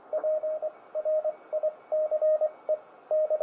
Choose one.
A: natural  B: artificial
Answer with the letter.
A